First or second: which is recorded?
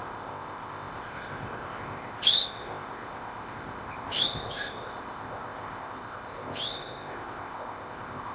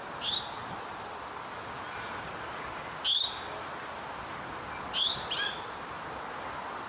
second